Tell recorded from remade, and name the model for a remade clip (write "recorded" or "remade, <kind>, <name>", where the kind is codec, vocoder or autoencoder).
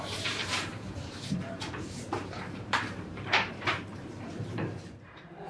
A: remade, vocoder, BigVGAN v2